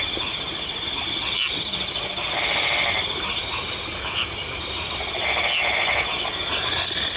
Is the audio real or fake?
real